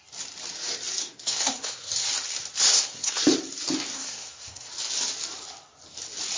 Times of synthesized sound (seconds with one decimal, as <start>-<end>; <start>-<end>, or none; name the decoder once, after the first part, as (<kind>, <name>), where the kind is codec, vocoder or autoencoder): 1.0-1.9 (codec, SNAC); 2.6-3.2; 3.9-4.7